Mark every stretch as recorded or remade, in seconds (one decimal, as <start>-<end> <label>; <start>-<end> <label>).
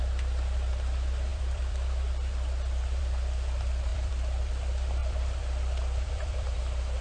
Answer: 0.0-1.3 recorded; 1.3-3.0 remade; 3.0-3.9 recorded; 3.9-4.5 remade; 4.5-5.0 recorded; 5.0-6.6 remade; 6.6-7.0 recorded